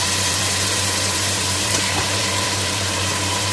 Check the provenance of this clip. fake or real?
fake